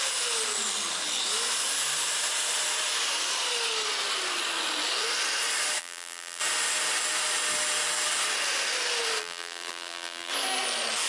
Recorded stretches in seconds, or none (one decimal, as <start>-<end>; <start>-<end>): 0.0-5.8; 6.4-9.2; 10.3-11.1